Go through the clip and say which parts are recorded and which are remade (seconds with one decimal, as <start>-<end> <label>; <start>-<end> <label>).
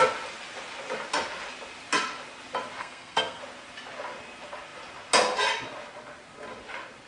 0.0-2.8 recorded; 2.8-3.4 remade; 3.4-7.1 recorded